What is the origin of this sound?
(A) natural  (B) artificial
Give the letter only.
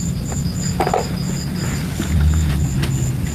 A